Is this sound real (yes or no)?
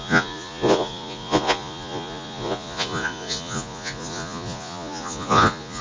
no